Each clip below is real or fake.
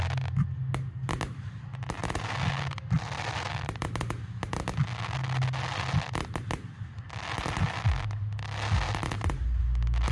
real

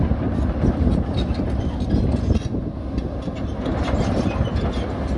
real